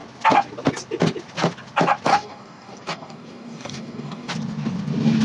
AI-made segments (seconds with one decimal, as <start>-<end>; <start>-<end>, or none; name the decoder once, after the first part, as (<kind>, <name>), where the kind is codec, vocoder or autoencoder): 2.1-4.3 (codec, DAC)

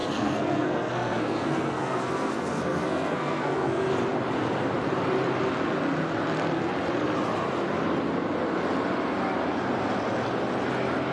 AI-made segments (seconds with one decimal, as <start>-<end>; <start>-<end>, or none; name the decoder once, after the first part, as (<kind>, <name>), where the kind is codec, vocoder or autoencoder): 0.0-3.9 (codec, SNAC)